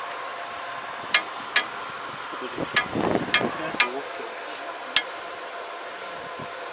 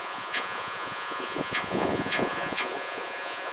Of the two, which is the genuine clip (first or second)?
first